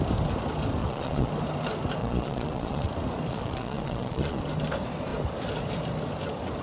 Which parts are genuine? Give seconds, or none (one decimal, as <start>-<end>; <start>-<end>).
0.0-0.8; 1.3-2.0; 2.9-3.3; 4.4-6.6